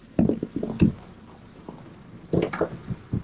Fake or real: real